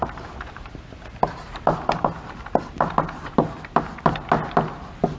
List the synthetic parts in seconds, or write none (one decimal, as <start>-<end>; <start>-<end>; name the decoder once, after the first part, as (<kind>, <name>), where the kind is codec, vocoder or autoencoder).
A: none